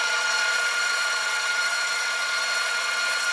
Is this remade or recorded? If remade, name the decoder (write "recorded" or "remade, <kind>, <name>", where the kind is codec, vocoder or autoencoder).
remade, vocoder, WaveNeXt